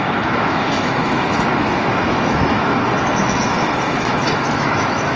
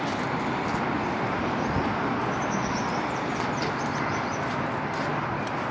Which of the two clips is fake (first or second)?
first